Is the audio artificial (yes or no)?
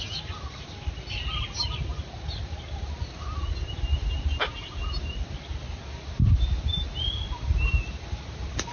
no